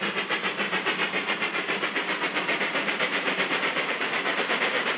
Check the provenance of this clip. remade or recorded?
remade